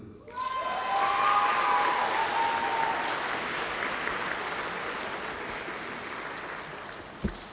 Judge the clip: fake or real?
real